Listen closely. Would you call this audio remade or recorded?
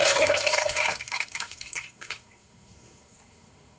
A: remade